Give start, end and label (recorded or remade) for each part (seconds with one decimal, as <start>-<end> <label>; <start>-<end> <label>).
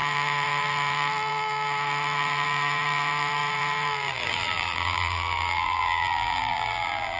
0.0-7.2 remade